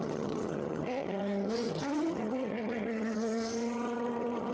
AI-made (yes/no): yes